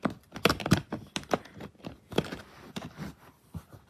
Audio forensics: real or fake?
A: real